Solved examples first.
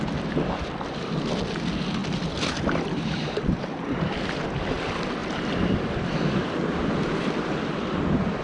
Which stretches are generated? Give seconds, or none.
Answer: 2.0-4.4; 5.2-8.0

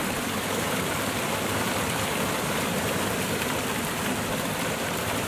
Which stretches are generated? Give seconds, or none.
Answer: 0.0-5.3